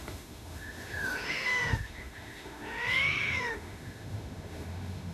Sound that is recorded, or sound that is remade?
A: remade